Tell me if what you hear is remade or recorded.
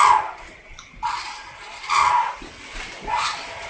recorded